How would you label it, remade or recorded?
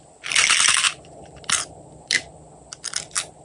remade